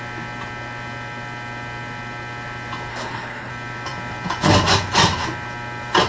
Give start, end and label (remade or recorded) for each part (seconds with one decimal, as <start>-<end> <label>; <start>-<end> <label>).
0.0-2.9 recorded; 2.9-3.5 remade; 3.5-6.1 recorded